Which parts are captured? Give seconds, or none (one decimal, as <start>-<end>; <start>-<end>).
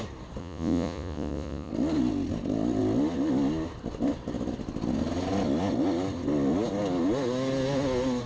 0.0-0.4; 1.7-8.3